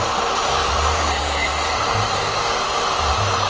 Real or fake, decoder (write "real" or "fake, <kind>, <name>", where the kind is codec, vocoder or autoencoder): fake, vocoder, BigVGAN v2